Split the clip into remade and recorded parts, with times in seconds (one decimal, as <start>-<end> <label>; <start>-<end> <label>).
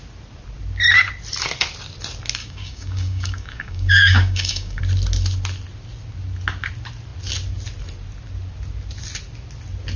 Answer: 0.0-2.4 recorded; 2.4-4.8 remade; 4.8-10.0 recorded